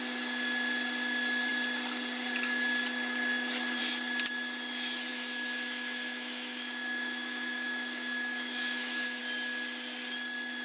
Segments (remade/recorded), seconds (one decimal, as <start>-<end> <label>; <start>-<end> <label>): 0.0-5.1 recorded; 5.1-9.2 remade; 9.2-10.6 recorded